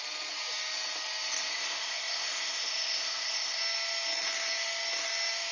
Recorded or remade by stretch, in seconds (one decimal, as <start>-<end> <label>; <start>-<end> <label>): 0.0-1.5 recorded; 1.5-3.6 remade; 3.6-5.5 recorded